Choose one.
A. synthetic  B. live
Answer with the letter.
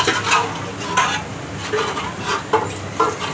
B